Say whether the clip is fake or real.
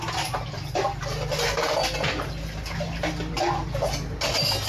real